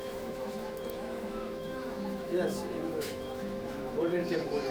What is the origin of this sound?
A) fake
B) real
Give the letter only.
A